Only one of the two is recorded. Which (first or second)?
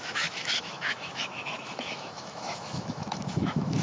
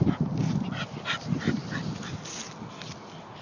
second